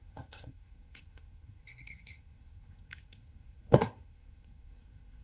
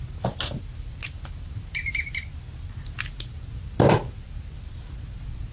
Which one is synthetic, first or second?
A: first